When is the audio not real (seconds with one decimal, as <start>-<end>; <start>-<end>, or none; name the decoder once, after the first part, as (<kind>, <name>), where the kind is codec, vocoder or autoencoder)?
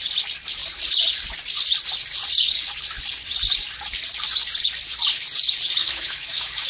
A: 5.8-6.7 (autoencoder, DAC-VAE)